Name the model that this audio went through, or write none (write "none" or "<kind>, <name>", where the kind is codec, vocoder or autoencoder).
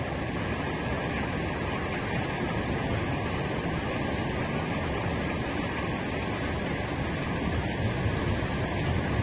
none